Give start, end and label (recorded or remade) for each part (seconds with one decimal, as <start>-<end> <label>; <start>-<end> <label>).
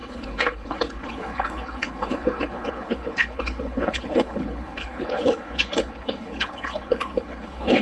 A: 0.0-7.8 remade